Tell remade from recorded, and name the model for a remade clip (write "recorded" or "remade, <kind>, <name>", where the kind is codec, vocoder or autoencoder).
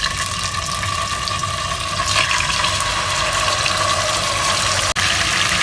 recorded